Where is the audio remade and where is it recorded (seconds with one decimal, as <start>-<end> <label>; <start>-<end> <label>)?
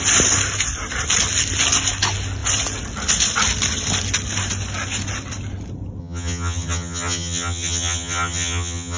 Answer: 0.0-6.0 recorded; 6.0-9.0 remade